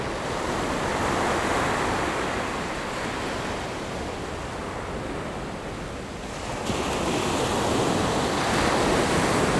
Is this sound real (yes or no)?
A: yes